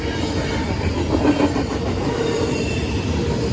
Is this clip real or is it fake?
real